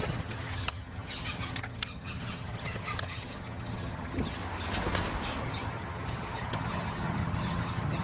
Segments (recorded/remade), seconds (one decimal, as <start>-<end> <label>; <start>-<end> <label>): 0.0-4.4 remade; 4.4-5.4 recorded; 5.4-8.0 remade